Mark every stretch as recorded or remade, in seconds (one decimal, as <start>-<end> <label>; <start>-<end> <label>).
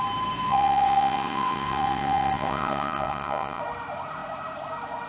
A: 0.0-0.5 recorded; 0.5-3.6 remade; 3.6-5.1 recorded